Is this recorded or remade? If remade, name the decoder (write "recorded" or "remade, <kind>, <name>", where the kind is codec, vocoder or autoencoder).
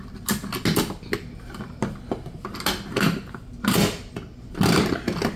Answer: recorded